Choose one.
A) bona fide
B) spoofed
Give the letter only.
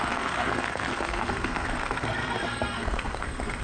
B